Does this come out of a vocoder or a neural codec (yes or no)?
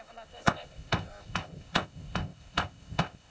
yes